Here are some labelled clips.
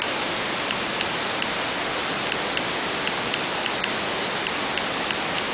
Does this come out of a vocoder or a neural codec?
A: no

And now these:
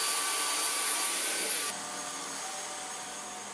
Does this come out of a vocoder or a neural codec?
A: no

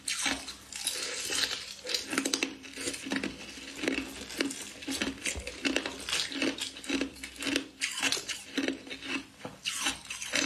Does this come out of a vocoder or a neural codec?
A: no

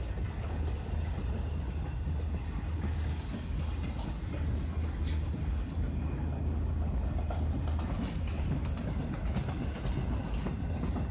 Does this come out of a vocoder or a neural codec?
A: no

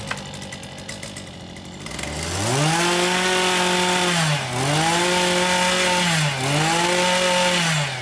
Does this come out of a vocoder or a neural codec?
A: no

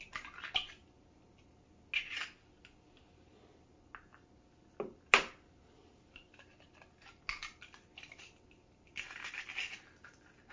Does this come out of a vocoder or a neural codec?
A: no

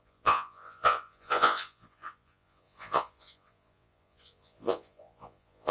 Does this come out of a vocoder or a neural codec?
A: yes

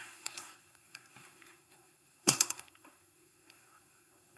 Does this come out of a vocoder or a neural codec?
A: yes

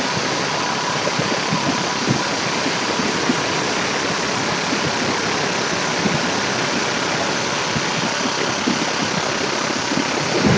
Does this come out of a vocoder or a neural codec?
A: no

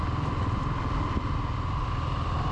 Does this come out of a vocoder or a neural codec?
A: no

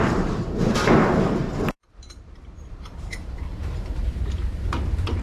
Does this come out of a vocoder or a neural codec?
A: yes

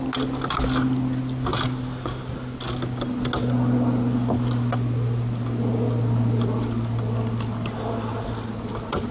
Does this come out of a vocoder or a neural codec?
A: no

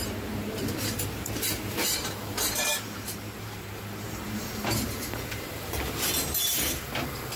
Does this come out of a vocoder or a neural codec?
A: yes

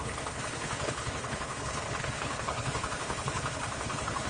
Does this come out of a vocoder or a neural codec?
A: yes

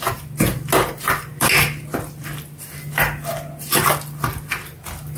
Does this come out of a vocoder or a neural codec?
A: no